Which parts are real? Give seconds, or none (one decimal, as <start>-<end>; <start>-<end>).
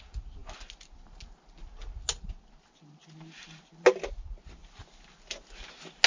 0.0-6.1